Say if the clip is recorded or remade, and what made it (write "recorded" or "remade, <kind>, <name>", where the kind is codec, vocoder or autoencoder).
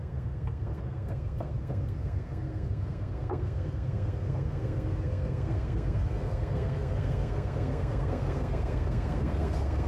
remade, codec, SNAC